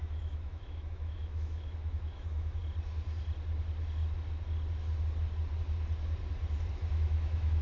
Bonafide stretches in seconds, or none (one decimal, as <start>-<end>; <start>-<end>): 2.6-6.9